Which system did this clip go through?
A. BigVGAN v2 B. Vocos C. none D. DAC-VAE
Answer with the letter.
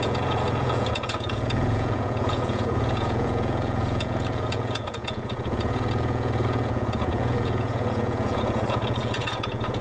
B